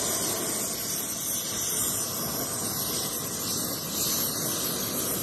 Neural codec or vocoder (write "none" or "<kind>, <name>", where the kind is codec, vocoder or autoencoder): none